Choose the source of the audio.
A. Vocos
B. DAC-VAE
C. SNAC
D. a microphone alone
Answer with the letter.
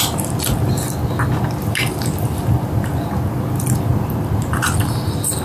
D